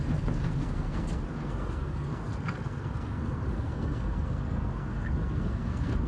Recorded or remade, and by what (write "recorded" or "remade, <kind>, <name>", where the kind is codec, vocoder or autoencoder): remade, codec, SNAC